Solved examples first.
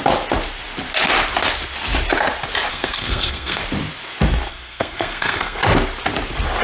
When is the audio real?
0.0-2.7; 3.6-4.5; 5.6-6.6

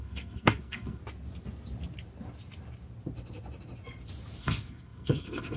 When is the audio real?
1.0-4.4

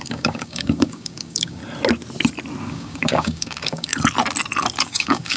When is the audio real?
1.6-2.7; 3.9-4.8